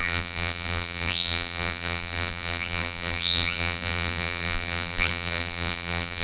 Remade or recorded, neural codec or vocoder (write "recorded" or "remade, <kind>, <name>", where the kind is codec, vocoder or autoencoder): remade, vocoder, BigVGAN v2